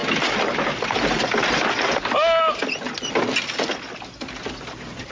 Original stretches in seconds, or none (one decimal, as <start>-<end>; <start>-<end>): 0.0-5.1